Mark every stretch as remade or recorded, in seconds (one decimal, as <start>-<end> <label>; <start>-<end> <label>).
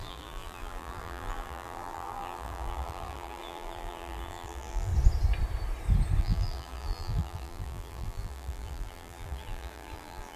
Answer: 0.0-4.9 remade; 4.9-6.2 recorded; 6.2-10.4 remade